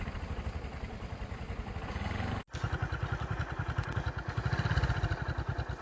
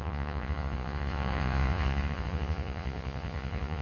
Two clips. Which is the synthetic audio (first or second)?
second